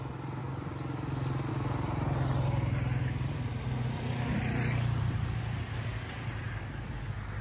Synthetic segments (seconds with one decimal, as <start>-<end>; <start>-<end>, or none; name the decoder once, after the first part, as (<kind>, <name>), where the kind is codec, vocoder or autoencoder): none